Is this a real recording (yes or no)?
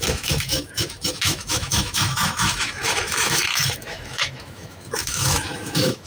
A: no